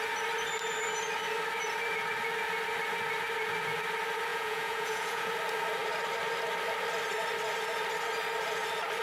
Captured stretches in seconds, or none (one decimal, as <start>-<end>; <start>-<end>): 0.0-4.3; 5.3-9.0